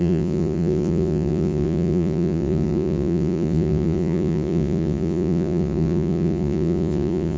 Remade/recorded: remade